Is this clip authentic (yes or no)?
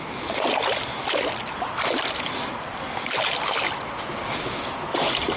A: yes